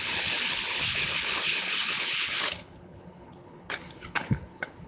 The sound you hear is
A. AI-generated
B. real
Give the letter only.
A